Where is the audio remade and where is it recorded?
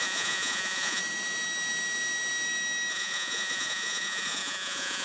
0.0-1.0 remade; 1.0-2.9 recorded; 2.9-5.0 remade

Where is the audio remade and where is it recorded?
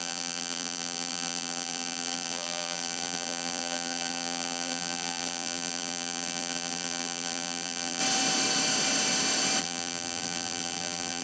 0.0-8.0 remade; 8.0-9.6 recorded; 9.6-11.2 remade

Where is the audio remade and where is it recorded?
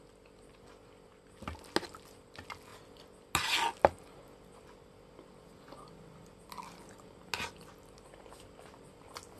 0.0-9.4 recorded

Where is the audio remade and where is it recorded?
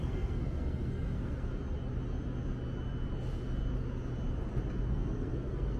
0.0-1.5 remade; 1.5-4.9 recorded; 4.9-5.8 remade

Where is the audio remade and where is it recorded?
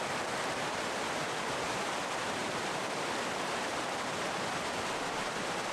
0.0-5.7 recorded